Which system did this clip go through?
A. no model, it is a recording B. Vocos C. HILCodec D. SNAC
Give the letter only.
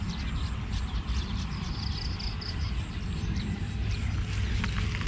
A